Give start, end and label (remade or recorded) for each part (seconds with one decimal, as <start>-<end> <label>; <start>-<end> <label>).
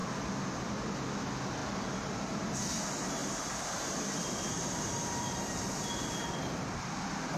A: 0.0-3.2 recorded; 3.2-6.9 remade; 6.9-7.4 recorded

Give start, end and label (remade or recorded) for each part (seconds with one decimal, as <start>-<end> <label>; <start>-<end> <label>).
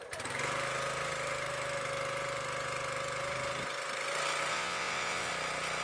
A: 0.0-4.5 recorded; 4.5-5.3 remade; 5.3-5.8 recorded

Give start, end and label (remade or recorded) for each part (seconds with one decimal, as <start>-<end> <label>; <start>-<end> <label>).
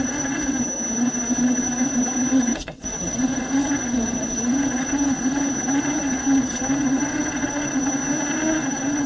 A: 0.0-8.0 remade; 8.0-8.6 recorded; 8.6-9.1 remade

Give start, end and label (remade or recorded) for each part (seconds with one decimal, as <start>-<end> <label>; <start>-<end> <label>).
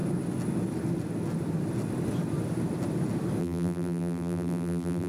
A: 0.0-3.4 recorded; 3.4-5.1 remade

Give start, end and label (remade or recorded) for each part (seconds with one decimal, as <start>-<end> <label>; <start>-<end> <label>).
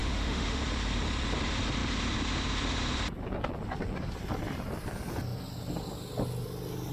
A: 0.0-0.6 remade; 0.6-6.9 recorded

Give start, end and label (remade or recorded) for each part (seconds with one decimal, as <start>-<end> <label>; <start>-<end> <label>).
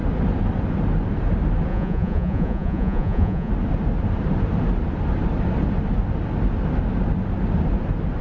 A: 0.0-1.7 recorded; 1.7-3.5 remade; 3.5-8.2 recorded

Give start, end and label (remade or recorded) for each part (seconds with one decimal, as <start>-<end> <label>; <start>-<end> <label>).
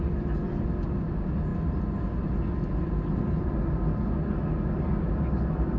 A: 0.0-5.8 recorded